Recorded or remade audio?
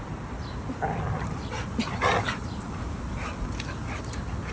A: recorded